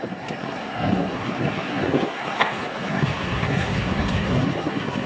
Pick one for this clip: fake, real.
fake